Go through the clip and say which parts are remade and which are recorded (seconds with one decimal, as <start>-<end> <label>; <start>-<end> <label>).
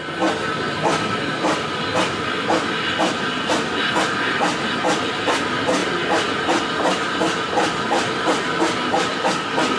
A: 0.0-9.8 recorded